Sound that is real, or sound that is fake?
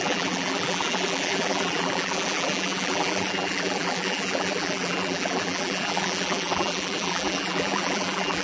fake